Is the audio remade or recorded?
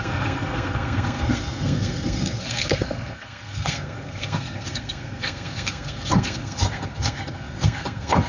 remade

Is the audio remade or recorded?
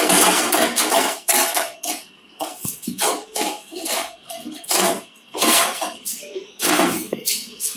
remade